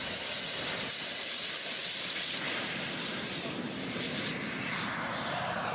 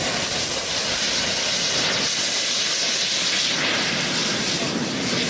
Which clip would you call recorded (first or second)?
second